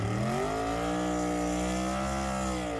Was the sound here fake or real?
real